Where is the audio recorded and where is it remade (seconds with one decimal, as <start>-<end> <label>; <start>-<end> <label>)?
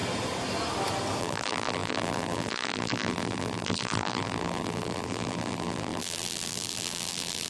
0.0-1.2 recorded; 1.2-7.5 remade